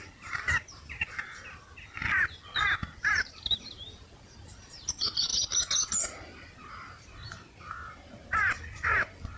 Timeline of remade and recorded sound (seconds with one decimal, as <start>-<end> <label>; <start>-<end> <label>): 0.0-9.4 recorded